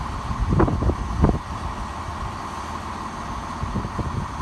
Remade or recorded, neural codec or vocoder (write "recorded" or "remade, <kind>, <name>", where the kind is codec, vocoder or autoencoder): recorded